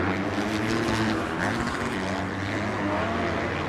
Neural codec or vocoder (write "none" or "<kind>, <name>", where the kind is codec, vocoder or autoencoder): none